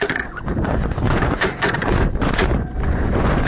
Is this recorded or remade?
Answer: remade